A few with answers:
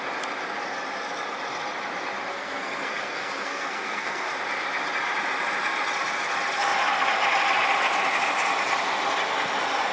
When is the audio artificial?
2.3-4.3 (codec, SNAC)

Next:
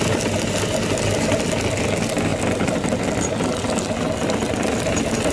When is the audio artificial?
none

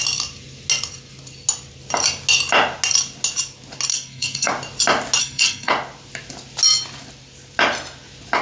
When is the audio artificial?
3.9-4.5 (codec, SNAC); 5.2-5.7

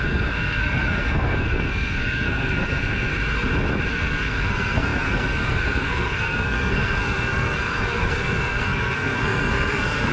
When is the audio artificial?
0.0-3.1 (codec, SNAC); 3.9-10.1